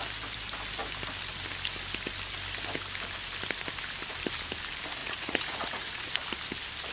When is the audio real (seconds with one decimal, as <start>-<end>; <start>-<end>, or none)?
0.0-5.0; 6.1-6.9